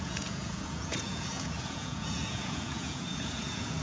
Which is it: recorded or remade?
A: remade